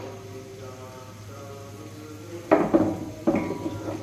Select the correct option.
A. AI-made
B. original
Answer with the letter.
B